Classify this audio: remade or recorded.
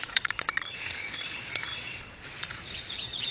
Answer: remade